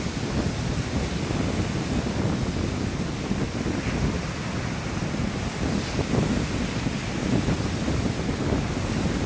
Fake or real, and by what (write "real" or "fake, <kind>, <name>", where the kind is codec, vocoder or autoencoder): real